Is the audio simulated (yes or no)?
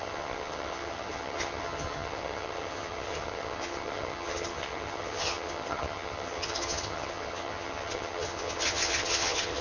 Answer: yes